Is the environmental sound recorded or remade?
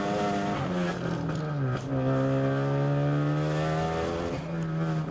recorded